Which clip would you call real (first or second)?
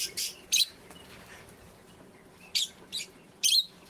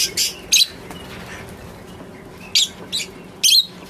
second